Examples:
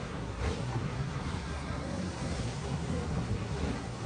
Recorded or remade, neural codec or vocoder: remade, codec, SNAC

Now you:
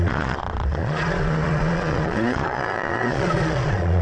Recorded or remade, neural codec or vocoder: remade, vocoder, Vocos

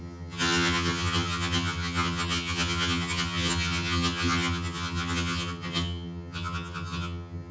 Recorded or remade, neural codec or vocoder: remade, vocoder, HiFi-GAN